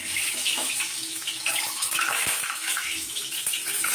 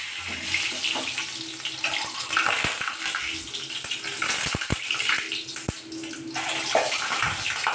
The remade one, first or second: first